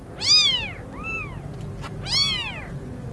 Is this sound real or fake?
real